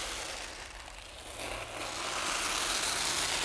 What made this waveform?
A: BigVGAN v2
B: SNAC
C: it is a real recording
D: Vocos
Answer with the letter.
C